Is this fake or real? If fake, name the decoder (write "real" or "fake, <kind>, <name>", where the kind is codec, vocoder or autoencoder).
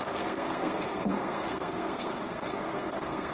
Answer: fake, codec, SNAC